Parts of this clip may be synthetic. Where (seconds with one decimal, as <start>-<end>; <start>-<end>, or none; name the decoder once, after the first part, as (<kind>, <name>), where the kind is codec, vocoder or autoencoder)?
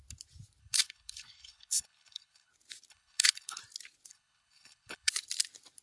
0.6-2.5 (codec, HILCodec); 2.9-3.6; 4.1-5.1